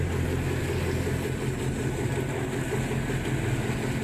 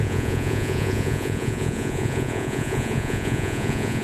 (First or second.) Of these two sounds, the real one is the first